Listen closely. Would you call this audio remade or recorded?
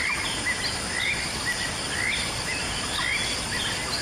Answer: recorded